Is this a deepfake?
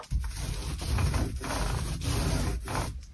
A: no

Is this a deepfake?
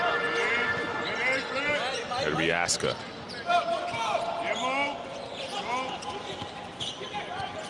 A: no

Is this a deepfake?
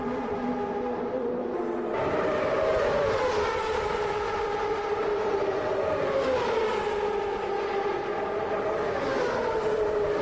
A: no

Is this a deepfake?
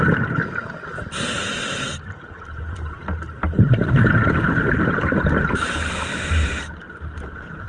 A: no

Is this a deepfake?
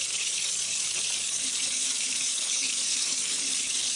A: yes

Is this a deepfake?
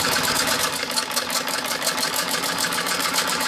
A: yes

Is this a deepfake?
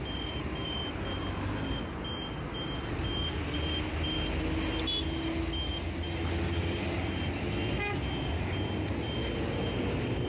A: no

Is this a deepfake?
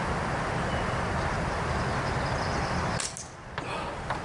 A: no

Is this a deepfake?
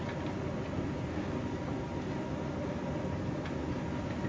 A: no